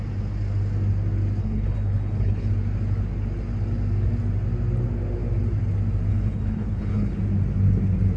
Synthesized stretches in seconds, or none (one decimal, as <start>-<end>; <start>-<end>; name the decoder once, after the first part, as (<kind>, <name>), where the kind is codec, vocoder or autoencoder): 1.4-2.5 (codec, HILCodec); 6.1-7.2